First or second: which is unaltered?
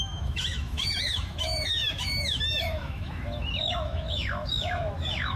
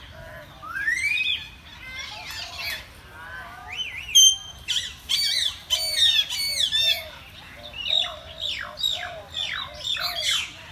second